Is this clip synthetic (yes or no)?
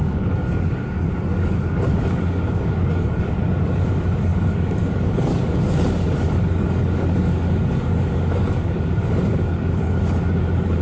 yes